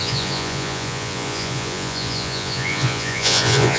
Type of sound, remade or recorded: remade